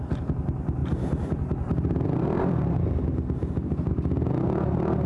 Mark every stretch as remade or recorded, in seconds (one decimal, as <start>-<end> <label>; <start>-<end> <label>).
0.0-0.8 recorded; 0.8-3.9 remade; 3.9-5.1 recorded

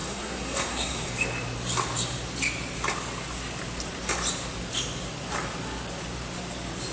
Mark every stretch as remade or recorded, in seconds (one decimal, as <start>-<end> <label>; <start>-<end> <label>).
0.0-1.1 remade; 1.1-6.9 recorded